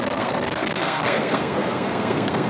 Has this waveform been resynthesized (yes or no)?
yes